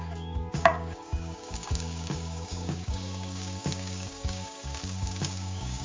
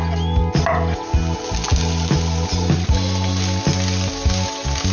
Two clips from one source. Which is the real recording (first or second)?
second